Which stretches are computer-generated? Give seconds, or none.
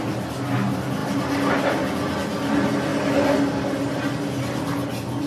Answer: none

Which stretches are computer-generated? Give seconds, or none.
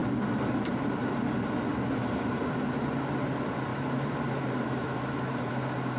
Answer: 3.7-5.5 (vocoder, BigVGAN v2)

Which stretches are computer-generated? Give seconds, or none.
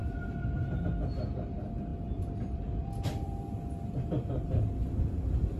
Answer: 1.9-5.6 (vocoder, BigVGAN v2)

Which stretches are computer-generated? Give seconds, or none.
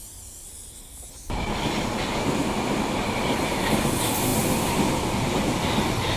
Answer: 2.4-2.9 (vocoder, BigVGAN v2)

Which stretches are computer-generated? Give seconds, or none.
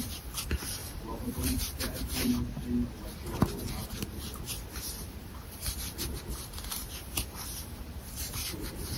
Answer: 0.8-2.3 (vocoder, BigVGAN v2); 3.8-9.0